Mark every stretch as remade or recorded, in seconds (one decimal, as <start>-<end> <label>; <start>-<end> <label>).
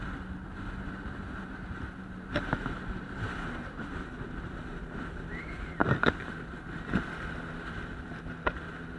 0.0-9.0 recorded